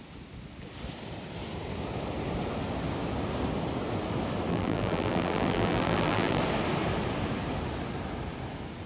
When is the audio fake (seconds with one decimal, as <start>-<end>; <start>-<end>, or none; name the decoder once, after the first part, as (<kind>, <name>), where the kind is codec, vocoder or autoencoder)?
4.5-6.4 (vocoder, BigVGAN v2)

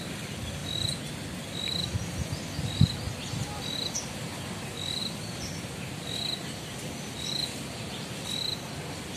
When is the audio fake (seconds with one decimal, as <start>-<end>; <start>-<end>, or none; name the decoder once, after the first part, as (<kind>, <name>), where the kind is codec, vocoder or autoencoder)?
none

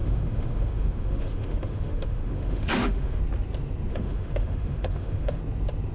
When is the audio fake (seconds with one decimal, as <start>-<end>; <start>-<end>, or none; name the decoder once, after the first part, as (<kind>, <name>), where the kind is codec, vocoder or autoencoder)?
0.0-3.2 (autoencoder, DAC-VAE); 3.9-5.4